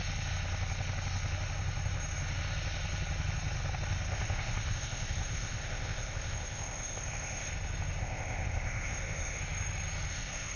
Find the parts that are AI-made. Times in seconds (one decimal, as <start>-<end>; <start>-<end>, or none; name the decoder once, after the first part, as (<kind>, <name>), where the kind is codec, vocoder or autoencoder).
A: 4.1-7.5 (codec, ZipCodec); 8.0-9.4; 10.1-10.6